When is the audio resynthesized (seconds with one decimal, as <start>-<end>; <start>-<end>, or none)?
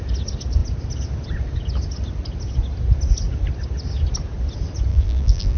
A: 4.9-5.6